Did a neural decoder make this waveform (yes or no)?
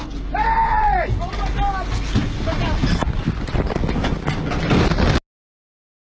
no